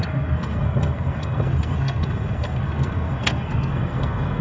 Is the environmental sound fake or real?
fake